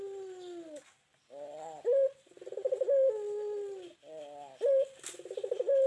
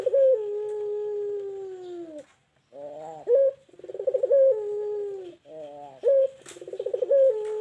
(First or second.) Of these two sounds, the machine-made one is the first